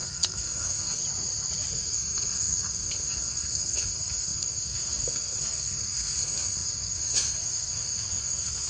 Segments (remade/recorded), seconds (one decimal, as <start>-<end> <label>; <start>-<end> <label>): 0.0-1.0 remade; 1.0-1.7 recorded; 1.7-8.7 remade